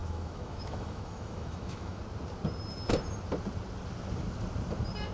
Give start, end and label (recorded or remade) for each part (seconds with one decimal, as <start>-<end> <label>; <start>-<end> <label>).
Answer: 0.0-2.0 remade; 2.0-5.1 recorded